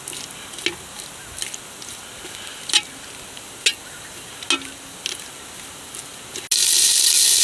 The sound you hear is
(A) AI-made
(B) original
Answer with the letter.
B